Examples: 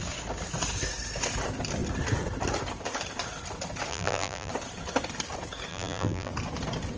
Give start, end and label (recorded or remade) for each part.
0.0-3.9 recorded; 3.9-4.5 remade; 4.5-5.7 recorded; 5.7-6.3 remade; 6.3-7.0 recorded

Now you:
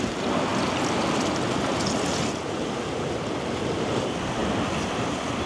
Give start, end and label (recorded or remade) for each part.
0.0-5.5 recorded

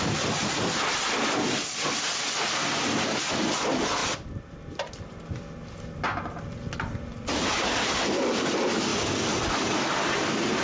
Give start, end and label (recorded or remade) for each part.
0.0-4.0 recorded; 4.0-4.9 remade; 4.9-10.6 recorded

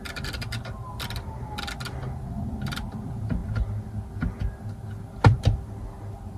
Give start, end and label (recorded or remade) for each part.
0.0-6.4 recorded